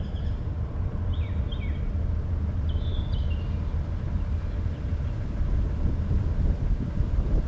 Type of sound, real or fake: real